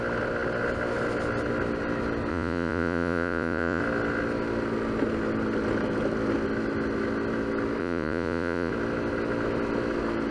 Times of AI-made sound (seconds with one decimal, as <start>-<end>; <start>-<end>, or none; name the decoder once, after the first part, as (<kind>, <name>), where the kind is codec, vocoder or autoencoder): 2.3-3.8 (vocoder, Vocos); 7.8-8.7